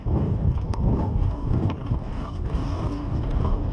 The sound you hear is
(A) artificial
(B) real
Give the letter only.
A